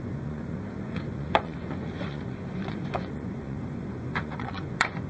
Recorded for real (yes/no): no